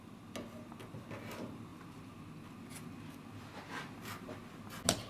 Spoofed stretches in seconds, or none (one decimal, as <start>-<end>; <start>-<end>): none